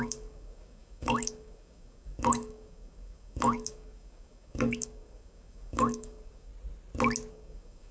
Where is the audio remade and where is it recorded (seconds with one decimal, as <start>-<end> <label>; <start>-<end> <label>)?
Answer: 0.0-6.5 remade; 6.5-7.3 recorded; 7.3-7.9 remade